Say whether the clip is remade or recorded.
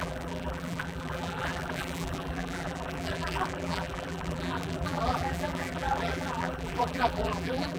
remade